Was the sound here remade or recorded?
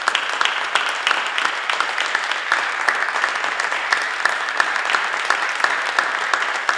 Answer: recorded